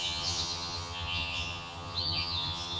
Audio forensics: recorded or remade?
remade